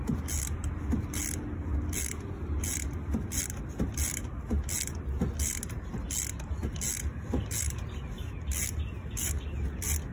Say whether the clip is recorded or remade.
recorded